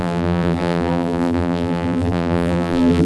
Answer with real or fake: fake